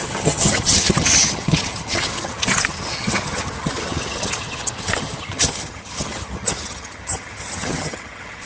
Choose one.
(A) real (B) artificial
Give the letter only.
B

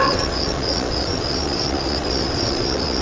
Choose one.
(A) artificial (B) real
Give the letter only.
A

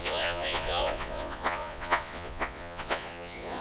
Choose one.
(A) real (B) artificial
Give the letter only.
B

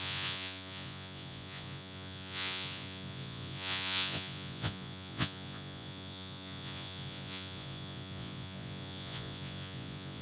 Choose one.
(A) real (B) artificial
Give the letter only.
B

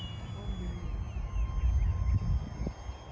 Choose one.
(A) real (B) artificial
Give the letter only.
A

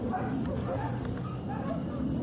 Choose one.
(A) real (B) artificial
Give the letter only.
A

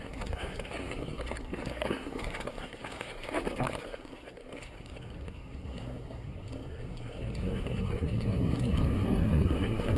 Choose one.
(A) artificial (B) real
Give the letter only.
A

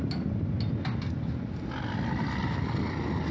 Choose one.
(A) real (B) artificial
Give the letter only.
A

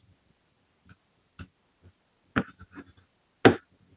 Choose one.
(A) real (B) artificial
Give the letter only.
A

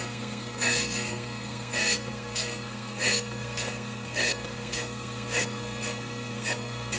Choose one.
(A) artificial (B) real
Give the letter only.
A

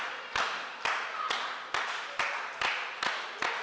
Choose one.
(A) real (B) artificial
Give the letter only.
A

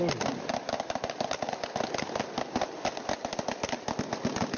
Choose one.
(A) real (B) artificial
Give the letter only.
A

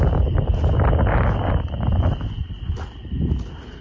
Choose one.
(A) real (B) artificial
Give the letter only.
A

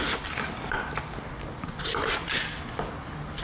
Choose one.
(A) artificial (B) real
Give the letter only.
A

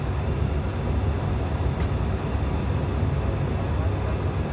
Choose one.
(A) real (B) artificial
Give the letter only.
A